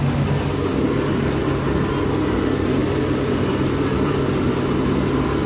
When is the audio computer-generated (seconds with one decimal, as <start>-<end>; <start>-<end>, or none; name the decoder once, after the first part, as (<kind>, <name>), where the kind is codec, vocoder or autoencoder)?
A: 0.7-1.4 (vocoder, BigVGAN v2); 2.8-4.5

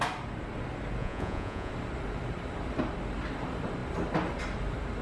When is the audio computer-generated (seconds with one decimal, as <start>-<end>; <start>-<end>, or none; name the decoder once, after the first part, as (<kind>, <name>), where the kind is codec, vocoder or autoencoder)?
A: 1.0-1.7 (vocoder, Vocos)

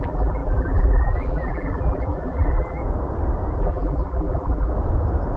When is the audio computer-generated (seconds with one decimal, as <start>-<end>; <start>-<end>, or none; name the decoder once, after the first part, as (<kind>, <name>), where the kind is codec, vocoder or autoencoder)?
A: 0.0-2.8 (vocoder, BigVGAN v2); 3.6-4.7

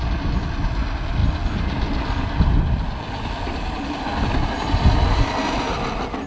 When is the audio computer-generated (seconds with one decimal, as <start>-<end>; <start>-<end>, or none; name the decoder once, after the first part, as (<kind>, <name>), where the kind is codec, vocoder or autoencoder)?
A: none